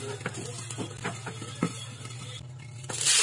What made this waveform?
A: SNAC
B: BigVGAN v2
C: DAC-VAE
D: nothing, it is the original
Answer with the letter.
D